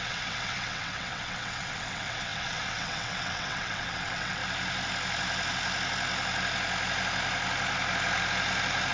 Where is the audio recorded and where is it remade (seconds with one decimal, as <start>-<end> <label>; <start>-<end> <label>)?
0.0-4.4 remade; 4.4-8.9 recorded